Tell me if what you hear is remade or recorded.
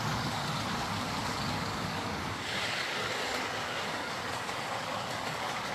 remade